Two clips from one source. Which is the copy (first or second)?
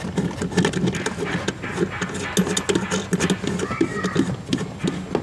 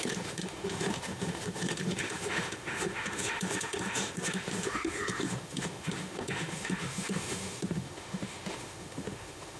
second